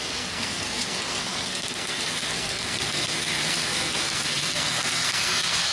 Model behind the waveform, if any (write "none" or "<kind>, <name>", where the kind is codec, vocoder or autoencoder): codec, SNAC